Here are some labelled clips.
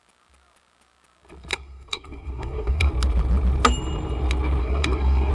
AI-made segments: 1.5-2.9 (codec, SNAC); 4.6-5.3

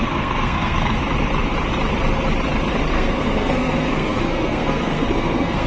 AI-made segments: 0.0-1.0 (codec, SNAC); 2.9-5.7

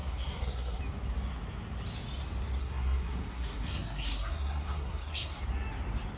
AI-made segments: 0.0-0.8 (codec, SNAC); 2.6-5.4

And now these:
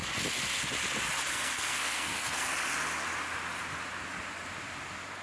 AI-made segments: 1.3-2.5 (codec, SNAC)

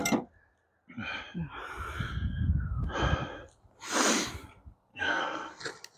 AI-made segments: 4.9-5.6 (codec, SNAC)

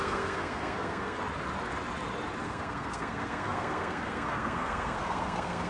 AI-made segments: 0.0-1.2 (codec, SNAC); 2.4-5.7